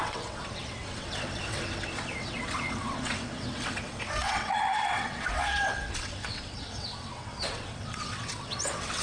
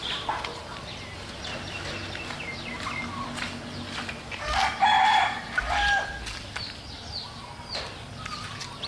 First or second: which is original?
second